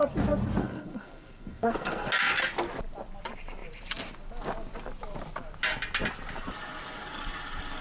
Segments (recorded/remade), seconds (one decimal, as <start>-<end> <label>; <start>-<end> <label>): 0.0-0.6 recorded; 0.6-2.1 remade; 2.1-7.8 recorded